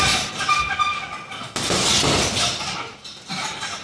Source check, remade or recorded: recorded